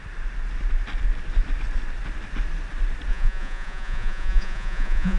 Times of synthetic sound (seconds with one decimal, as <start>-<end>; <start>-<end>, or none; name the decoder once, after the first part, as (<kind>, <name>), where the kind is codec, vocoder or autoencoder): 3.1-5.2 (vocoder, Vocos)